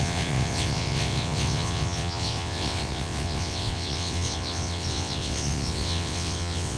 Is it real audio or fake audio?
fake